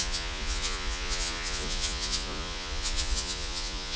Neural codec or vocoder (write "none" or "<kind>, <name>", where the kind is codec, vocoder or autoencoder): vocoder, Vocos